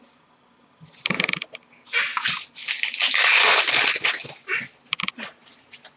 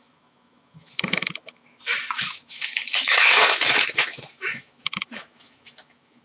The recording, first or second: first